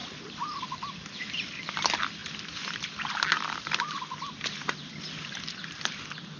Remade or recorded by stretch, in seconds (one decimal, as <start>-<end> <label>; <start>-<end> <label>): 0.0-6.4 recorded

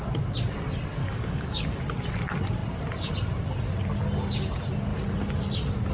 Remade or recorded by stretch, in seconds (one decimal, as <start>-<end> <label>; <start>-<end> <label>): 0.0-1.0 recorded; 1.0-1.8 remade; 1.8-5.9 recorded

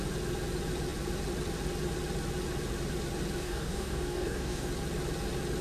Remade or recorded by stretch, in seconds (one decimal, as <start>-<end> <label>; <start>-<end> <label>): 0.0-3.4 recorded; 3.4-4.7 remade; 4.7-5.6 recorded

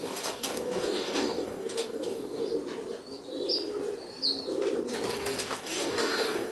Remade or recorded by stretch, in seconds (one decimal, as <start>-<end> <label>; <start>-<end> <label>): 0.0-2.4 remade; 2.4-5.1 recorded; 5.1-6.5 remade